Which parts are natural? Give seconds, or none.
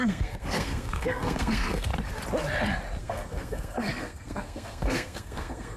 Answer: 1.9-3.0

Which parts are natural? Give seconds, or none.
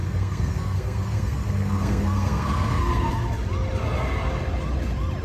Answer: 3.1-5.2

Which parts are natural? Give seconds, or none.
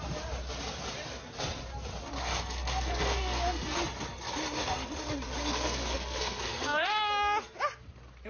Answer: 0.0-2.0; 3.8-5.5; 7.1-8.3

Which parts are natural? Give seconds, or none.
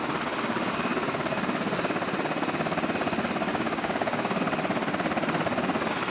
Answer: 0.0-3.5; 4.4-6.1